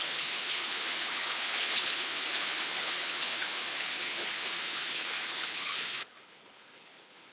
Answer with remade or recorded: remade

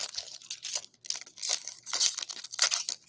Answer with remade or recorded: recorded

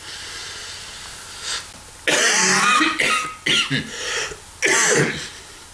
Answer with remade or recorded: recorded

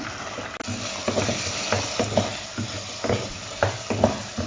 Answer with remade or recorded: recorded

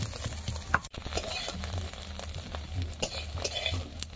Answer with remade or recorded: recorded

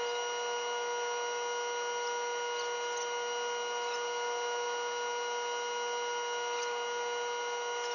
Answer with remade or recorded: recorded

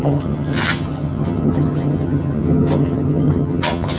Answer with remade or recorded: remade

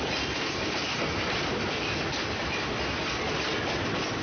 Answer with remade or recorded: recorded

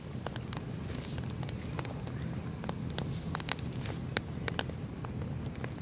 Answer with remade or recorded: recorded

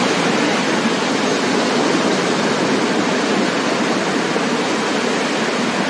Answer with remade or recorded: recorded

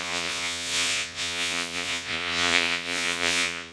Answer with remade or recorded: remade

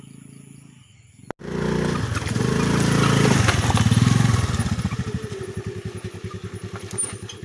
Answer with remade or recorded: recorded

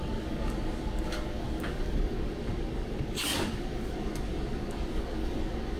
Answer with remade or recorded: remade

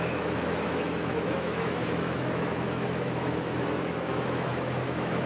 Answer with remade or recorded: remade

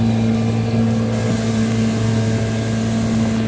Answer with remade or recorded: recorded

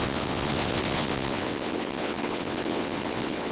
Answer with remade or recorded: remade